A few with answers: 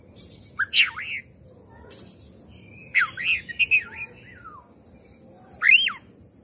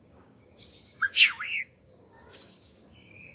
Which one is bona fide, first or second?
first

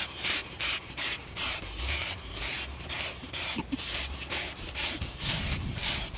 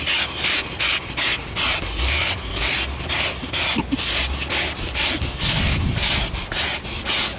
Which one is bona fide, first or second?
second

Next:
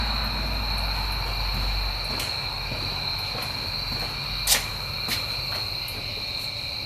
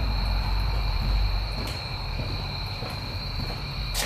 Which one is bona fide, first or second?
first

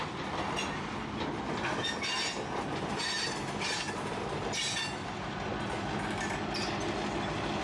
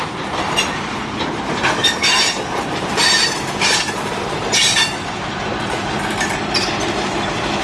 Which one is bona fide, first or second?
first